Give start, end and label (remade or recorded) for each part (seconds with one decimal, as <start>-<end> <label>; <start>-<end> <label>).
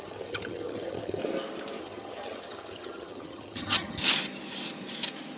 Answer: 0.0-1.2 remade; 1.2-1.8 recorded; 1.8-4.0 remade; 4.0-5.4 recorded